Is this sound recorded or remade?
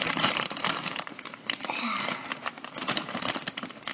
remade